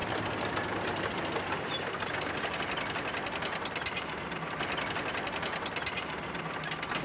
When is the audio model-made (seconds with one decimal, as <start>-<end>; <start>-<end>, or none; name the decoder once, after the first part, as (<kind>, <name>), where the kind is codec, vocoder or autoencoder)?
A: none